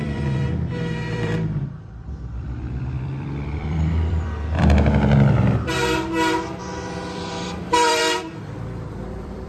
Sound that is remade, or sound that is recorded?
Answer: remade